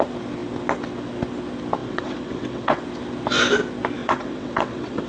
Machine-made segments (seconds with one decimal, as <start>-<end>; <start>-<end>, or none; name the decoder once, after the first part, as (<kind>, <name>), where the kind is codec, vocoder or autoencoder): 1.8-2.8 (vocoder, WaveNeXt); 4.0-5.1